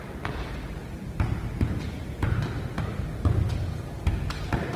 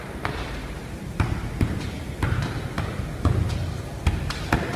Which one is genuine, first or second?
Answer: first